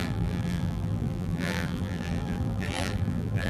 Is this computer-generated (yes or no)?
yes